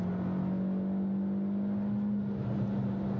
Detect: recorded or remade recorded